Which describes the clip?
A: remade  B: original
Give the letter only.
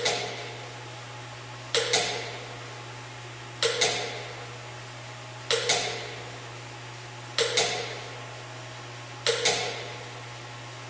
B